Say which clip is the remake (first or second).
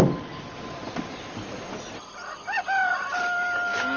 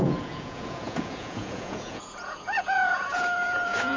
second